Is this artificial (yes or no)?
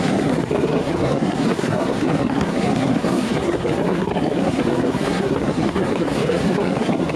yes